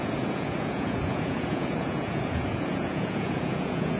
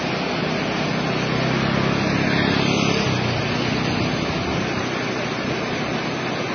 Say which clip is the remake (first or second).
first